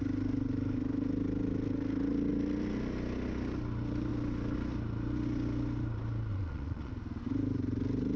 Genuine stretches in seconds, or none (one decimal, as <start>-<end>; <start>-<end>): 0.0-6.3; 6.9-8.2